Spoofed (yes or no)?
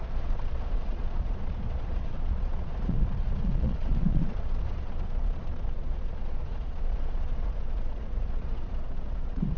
yes